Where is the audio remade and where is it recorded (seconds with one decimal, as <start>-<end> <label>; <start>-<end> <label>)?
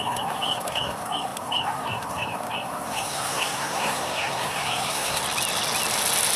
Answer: 0.0-5.2 remade; 5.2-6.4 recorded